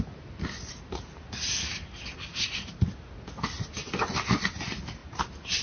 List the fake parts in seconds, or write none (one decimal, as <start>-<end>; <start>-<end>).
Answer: none